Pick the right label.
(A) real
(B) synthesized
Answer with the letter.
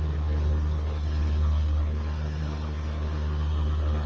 B